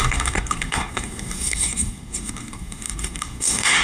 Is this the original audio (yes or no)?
no